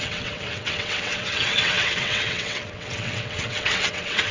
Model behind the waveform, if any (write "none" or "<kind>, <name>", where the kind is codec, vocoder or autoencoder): vocoder, WaveNeXt